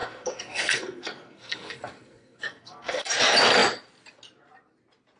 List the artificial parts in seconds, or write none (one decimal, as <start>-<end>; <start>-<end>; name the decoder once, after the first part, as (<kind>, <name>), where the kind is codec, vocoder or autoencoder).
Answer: 0.0-3.1 (codec, SNAC)

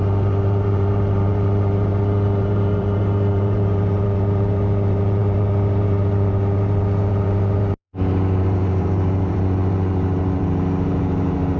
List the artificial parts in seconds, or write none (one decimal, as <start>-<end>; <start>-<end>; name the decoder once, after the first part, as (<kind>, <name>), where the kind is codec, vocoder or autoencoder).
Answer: 0.0-11.6 (vocoder, BigVGAN v2)

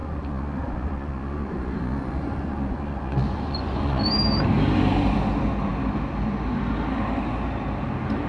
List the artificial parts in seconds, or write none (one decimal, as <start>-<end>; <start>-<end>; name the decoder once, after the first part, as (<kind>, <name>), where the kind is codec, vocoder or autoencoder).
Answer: 0.0-4.0 (vocoder, Vocos)

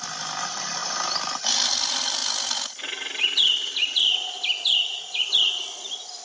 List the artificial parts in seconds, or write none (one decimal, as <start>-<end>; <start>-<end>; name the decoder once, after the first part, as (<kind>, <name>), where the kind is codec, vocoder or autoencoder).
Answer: none

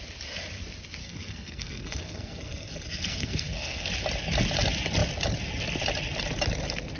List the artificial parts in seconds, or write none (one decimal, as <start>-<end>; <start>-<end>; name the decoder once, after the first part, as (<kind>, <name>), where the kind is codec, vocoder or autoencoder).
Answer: 1.0-3.9 (codec, SNAC)